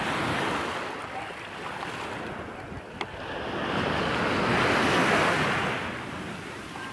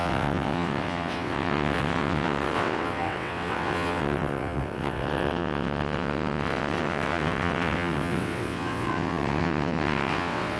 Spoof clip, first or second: second